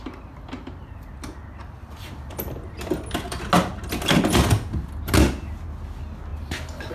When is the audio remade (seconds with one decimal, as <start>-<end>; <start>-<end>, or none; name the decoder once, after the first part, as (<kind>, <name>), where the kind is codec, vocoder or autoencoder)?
none

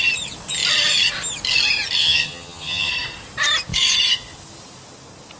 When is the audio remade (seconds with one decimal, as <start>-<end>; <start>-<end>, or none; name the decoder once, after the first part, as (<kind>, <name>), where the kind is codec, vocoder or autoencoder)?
2.0-2.9 (vocoder, HiFi-GAN)

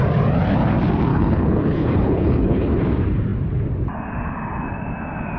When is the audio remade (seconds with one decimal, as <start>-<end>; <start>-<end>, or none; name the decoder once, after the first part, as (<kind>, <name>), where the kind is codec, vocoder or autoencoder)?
1.1-2.8 (codec, HILCodec)